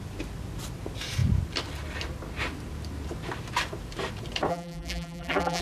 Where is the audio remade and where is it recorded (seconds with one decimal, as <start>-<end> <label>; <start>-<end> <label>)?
0.0-4.5 recorded; 4.5-5.6 remade